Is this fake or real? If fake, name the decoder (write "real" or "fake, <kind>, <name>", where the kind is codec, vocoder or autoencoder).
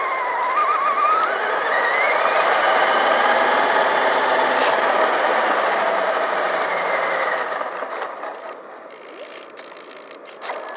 real